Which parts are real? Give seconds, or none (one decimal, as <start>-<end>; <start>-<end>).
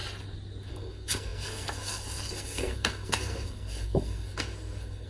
0.0-0.7